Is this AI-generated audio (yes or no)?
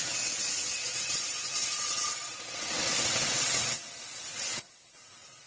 yes